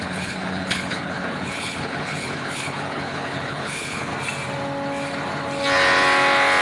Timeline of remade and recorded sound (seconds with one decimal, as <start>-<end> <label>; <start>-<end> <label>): 0.0-4.1 remade; 4.1-6.6 recorded